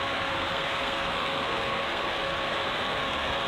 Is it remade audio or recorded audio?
remade